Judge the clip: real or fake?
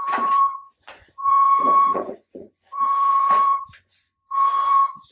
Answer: fake